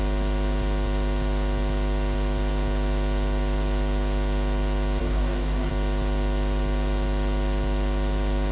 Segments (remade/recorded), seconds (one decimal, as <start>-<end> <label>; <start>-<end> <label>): 0.0-5.0 recorded; 5.0-5.7 remade; 5.7-8.5 recorded